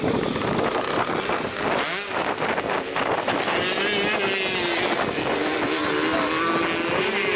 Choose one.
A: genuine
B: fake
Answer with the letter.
A